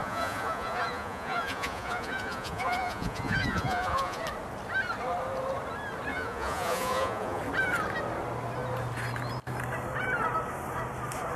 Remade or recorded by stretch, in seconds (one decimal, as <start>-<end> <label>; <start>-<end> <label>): 0.0-4.2 remade; 4.2-6.1 recorded; 6.1-7.4 remade; 7.4-11.4 recorded